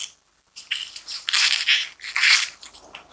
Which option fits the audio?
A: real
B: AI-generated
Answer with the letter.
A